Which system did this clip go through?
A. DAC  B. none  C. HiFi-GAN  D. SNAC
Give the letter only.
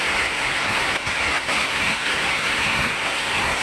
D